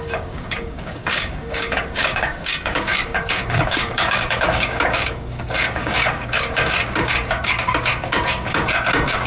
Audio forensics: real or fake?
fake